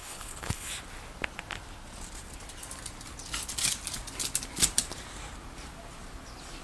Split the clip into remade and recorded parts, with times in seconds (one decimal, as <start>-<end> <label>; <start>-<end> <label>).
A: 0.0-0.7 remade; 0.7-6.6 recorded